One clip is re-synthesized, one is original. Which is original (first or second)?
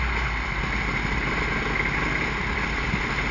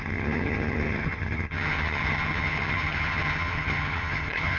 first